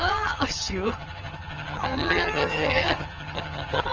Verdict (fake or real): fake